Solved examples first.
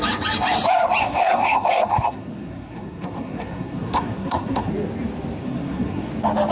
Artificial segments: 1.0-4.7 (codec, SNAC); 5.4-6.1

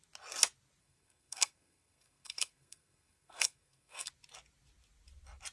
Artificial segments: 0.8-4.1 (codec, SNAC)

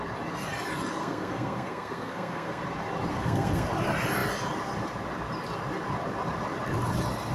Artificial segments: 1.0-2.6 (codec, SNAC); 3.1-3.7

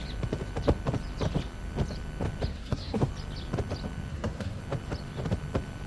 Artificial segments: 2.5-3.1 (codec, SNAC); 4.1-4.6

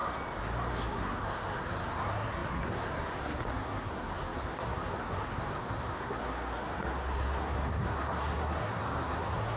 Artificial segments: 0.7-9.6 (codec, SNAC)